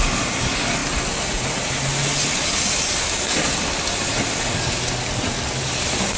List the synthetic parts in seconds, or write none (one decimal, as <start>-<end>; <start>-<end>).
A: none